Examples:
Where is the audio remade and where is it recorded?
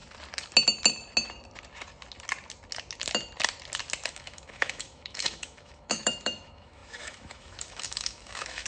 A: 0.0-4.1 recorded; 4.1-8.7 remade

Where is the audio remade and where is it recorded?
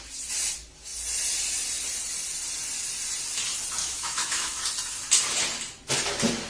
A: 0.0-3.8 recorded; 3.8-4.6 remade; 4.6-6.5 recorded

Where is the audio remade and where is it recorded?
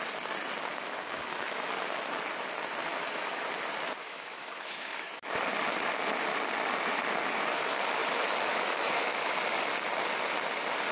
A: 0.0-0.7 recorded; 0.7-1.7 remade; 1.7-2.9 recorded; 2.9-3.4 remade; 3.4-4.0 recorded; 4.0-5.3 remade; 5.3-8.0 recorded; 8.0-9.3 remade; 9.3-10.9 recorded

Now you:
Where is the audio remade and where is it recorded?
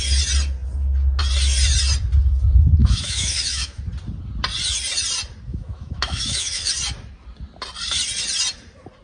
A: 0.0-2.8 recorded; 2.8-3.8 remade; 3.8-5.5 recorded; 5.5-6.7 remade; 6.7-9.0 recorded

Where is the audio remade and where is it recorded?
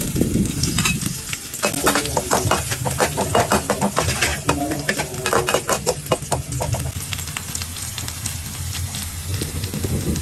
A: 0.0-10.2 recorded